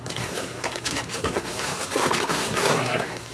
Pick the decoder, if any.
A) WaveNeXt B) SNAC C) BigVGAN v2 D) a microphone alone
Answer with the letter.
B